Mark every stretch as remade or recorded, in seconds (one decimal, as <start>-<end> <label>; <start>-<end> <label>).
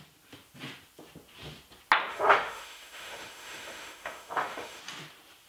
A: 0.0-2.1 recorded; 2.1-4.8 remade; 4.8-5.5 recorded